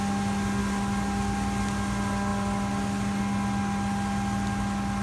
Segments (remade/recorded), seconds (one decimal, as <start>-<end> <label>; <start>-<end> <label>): 0.0-5.0 recorded